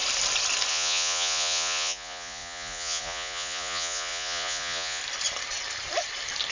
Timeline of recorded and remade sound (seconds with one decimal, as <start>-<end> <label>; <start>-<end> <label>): 0.0-0.7 recorded; 0.7-5.0 remade; 5.0-6.5 recorded